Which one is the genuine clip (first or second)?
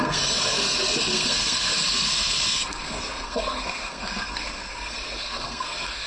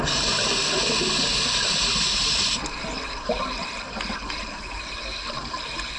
second